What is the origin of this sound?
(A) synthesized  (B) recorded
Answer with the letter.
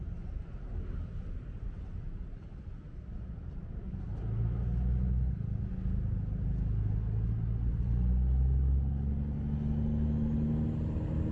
B